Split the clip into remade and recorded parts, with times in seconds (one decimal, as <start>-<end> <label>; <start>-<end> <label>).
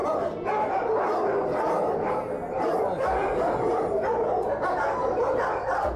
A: 0.0-3.2 recorded; 3.2-4.0 remade; 4.0-5.0 recorded; 5.0-6.0 remade